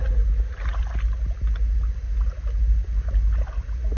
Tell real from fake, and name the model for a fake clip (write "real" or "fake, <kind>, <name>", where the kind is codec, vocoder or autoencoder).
real